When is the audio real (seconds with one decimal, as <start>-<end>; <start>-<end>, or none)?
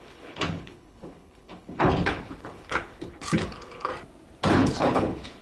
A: 3.9-4.5